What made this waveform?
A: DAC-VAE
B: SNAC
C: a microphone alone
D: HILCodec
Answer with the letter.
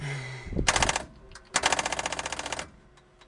C